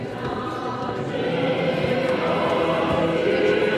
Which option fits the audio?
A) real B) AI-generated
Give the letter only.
A